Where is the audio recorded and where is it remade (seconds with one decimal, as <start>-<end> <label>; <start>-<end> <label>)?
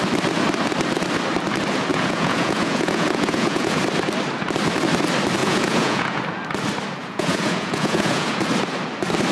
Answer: 0.0-1.9 recorded; 1.9-3.8 remade; 3.8-5.4 recorded; 5.4-6.2 remade; 6.2-7.0 recorded; 7.0-8.4 remade; 8.4-9.3 recorded